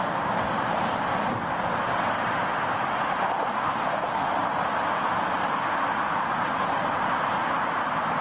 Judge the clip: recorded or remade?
recorded